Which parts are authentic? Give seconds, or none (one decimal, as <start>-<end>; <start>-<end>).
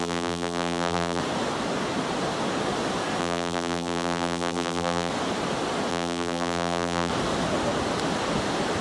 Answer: 1.2-3.2; 5.1-5.9; 7.1-8.8